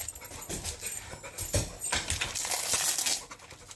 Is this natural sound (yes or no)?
yes